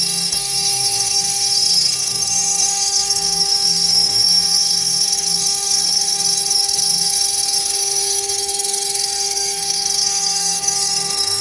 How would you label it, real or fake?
fake